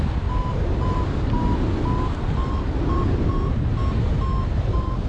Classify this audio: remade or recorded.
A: recorded